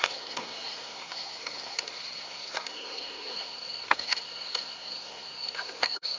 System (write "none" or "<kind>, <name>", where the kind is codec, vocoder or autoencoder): codec, SNAC